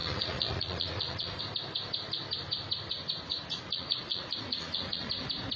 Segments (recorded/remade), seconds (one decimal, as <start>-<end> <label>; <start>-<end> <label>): 0.0-1.4 remade; 1.4-3.3 recorded; 3.3-5.1 remade; 5.1-5.6 recorded